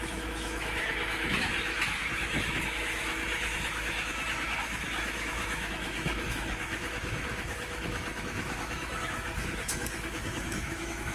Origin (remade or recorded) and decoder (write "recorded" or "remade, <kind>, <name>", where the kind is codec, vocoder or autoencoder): remade, autoencoder, DAC-VAE